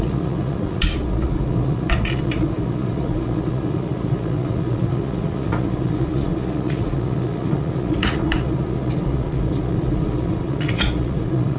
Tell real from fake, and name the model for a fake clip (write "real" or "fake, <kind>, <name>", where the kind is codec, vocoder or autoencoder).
fake, vocoder, Vocos